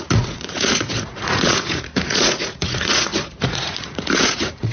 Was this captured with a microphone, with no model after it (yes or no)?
no